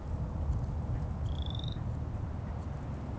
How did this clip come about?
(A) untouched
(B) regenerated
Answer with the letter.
A